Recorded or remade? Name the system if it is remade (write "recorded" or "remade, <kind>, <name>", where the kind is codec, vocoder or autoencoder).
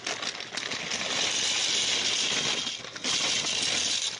recorded